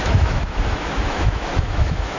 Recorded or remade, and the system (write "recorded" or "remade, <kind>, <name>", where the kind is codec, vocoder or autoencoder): remade, autoencoder, DAC-VAE